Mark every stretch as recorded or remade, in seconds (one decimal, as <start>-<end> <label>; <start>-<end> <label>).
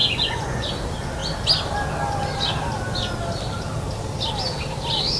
0.0-0.7 remade; 0.7-5.2 recorded